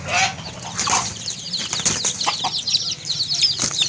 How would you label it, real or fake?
real